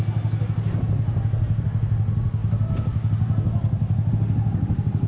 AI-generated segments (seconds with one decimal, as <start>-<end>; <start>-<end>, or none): none